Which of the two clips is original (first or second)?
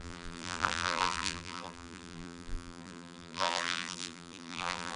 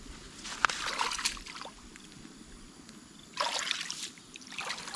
second